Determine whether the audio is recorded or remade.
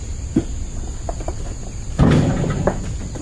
recorded